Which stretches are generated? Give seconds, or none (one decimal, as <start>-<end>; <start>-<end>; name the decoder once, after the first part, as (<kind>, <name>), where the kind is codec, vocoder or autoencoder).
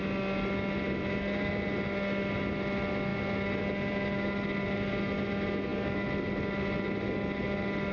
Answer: none